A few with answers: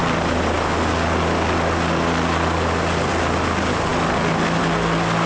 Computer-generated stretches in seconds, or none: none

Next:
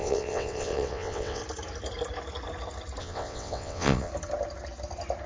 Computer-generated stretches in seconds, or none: 0.0-1.4 (vocoder, WaveNeXt); 3.0-4.1

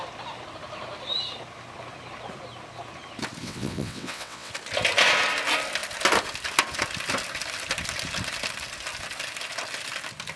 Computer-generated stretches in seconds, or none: 3.4-4.5 (vocoder, WaveNeXt)

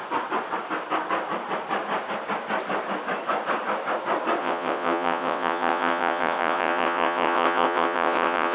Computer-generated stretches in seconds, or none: 4.4-8.5 (vocoder, WaveNeXt)

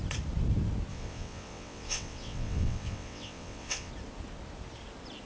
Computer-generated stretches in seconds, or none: 0.9-3.9 (vocoder, WaveNeXt)